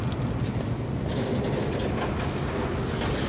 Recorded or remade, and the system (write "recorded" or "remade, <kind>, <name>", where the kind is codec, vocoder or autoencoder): recorded